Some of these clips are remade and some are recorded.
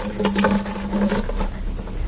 recorded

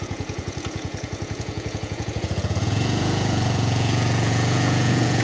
remade